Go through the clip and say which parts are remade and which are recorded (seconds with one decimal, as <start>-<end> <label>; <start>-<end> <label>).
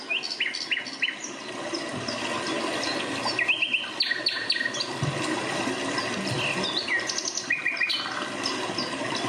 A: 0.0-9.3 recorded